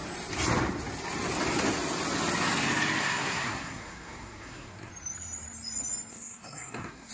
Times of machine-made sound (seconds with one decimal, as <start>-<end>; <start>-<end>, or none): 3.0-4.9; 6.1-7.1